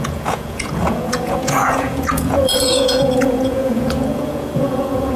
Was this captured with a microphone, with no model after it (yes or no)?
no